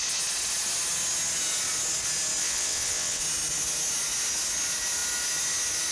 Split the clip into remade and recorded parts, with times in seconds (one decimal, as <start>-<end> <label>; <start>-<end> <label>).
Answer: 0.0-2.4 recorded; 2.4-3.2 remade; 3.2-5.9 recorded